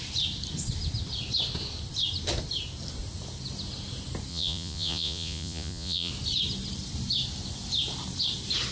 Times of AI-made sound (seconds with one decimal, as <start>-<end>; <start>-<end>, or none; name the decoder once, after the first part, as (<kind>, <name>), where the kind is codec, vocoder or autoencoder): 4.3-6.1 (vocoder, Vocos)

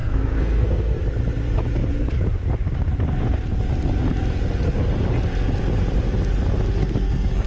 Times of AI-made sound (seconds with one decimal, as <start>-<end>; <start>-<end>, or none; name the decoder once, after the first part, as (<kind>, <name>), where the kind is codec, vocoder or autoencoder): 0.0-1.0 (codec, SNAC); 6.8-7.5

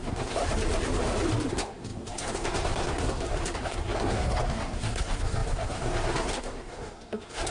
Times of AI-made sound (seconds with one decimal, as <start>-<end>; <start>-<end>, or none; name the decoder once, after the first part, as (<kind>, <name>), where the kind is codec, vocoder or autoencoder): 0.0-0.4 (codec, SNAC); 1.5-7.5

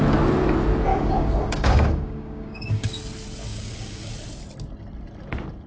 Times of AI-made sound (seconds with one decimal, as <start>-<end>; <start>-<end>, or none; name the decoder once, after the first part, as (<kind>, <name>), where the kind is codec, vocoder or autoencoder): 0.9-2.9 (codec, DAC); 3.5-4.1

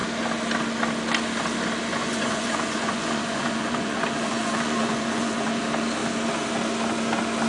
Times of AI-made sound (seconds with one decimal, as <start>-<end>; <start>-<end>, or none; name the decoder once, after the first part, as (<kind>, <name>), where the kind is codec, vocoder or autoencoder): 1.9-5.6 (vocoder, Vocos)

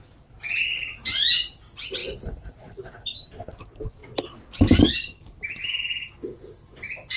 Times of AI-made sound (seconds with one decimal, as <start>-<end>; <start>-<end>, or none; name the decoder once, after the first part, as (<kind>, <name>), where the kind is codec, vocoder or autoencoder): 4.0-7.2 (vocoder, BigVGAN v2)

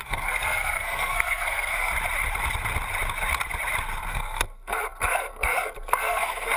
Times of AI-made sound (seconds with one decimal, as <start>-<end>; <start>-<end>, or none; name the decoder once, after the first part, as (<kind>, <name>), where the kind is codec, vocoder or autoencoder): 0.0-1.9 (codec, SNAC); 4.1-6.6

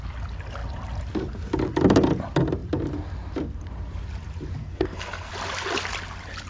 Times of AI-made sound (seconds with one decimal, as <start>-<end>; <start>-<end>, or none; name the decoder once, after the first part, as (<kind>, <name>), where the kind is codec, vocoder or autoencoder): 4.6-5.3 (codec, SNAC)